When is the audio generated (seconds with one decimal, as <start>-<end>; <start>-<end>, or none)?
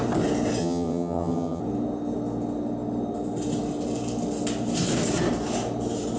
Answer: 0.6-1.6